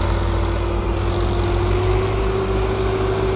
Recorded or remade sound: recorded